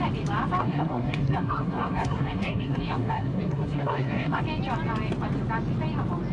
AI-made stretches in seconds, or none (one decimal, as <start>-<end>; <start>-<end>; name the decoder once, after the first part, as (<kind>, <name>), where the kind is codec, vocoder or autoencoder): 0.6-4.4 (codec, SNAC)